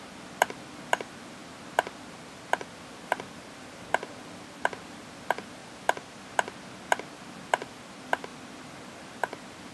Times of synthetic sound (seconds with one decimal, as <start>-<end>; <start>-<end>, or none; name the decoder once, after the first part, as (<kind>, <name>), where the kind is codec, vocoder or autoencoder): 0.0-5.6 (vocoder, BigVGAN v2); 6.9-9.7